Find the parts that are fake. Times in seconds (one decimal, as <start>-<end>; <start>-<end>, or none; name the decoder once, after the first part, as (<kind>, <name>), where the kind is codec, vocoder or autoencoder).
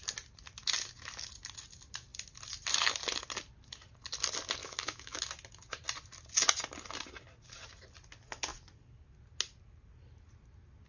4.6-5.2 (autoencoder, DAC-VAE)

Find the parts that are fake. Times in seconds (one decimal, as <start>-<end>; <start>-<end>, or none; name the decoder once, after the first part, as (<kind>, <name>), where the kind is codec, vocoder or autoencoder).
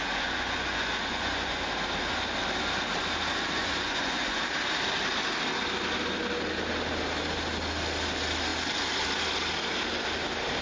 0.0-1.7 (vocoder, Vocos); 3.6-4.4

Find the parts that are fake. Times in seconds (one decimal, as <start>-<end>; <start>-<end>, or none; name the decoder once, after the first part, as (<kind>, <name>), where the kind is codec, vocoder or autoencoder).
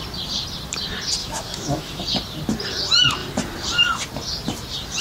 1.2-2.0 (autoencoder, DAC-VAE)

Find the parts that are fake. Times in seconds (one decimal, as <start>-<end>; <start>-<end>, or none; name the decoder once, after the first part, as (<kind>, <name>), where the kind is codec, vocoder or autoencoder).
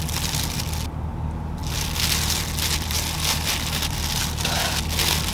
none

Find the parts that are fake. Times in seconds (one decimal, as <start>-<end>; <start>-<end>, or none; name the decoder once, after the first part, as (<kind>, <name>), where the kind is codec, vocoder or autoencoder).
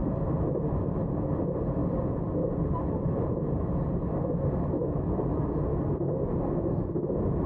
1.8-3.7 (vocoder, BigVGAN v2); 4.8-5.4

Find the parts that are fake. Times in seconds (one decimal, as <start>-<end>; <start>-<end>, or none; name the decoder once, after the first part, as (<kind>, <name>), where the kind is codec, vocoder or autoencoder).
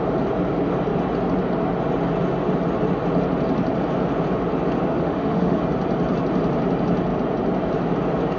4.9-5.6 (autoencoder, DAC-VAE)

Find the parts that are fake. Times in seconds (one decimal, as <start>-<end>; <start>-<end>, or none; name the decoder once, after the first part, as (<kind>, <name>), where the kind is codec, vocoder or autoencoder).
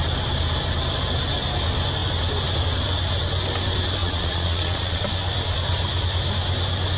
4.0-5.0 (vocoder, Vocos)